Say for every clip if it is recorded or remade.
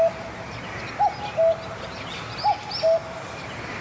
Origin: recorded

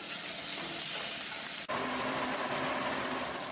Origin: recorded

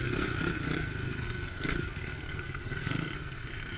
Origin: remade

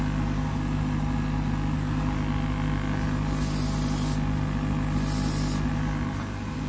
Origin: recorded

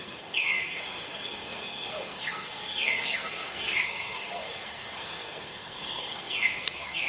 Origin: remade